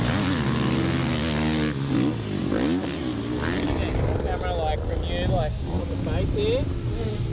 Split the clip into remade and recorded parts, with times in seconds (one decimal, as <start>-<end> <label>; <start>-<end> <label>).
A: 0.0-7.3 recorded